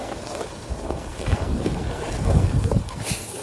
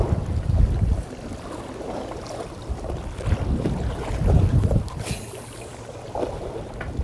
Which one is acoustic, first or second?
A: second